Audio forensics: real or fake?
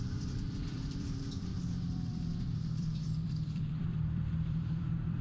fake